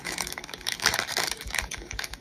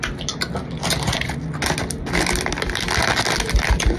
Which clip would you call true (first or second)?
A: second